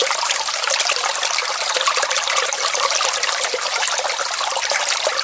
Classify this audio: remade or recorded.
recorded